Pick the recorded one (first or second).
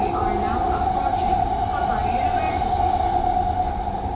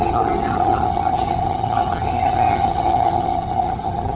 first